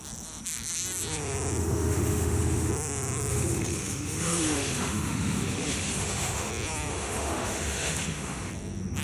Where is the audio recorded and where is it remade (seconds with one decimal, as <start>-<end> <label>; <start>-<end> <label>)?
0.0-1.6 recorded; 1.6-2.7 remade; 2.7-3.3 recorded; 3.3-6.5 remade; 6.5-6.9 recorded; 6.9-8.5 remade; 8.5-9.0 recorded